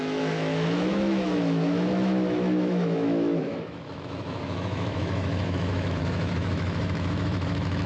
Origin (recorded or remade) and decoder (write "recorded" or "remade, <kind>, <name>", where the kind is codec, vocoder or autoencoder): remade, autoencoder, DAC-VAE